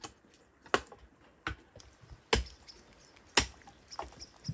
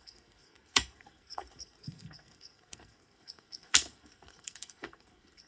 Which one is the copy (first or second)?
second